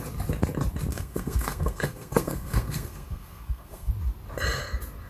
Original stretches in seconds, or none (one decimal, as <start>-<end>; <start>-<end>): 0.0-0.9; 3.9-5.1